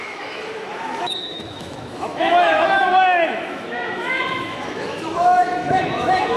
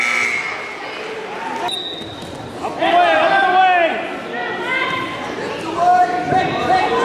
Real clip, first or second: second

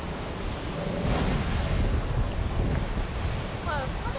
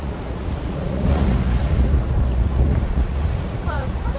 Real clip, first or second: first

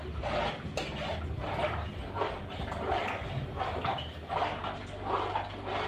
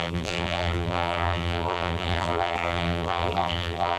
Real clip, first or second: first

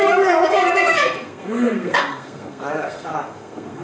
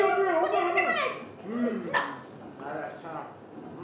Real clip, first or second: second